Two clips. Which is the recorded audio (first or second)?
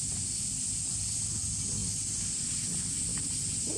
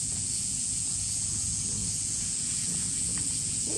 first